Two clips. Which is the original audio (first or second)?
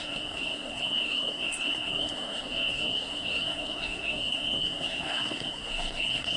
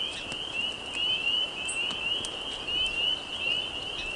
second